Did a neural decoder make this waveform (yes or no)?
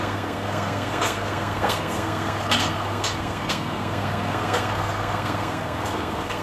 yes